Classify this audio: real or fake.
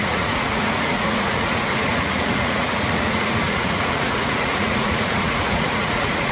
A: fake